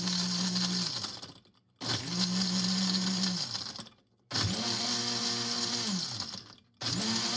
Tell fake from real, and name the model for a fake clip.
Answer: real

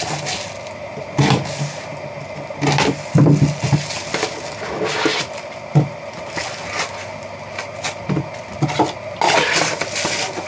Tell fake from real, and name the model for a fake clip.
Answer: real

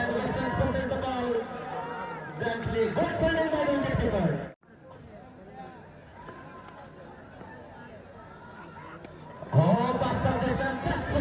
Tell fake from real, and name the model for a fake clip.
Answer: real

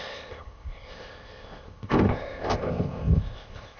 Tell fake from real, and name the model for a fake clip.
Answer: fake, codec, ZipCodec